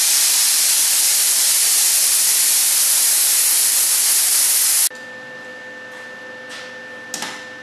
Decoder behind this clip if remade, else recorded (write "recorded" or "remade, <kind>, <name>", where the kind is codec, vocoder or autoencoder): recorded